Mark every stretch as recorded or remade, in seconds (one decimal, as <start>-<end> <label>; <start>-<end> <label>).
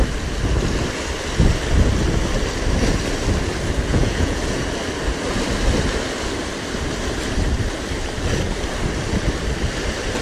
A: 0.0-3.9 recorded; 3.9-4.4 remade; 4.4-10.2 recorded